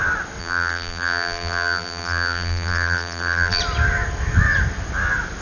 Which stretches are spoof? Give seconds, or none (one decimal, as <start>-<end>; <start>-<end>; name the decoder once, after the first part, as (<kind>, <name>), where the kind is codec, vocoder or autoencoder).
0.4-3.6 (vocoder, BigVGAN v2)